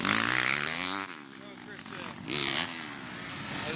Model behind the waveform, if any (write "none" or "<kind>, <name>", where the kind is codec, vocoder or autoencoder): none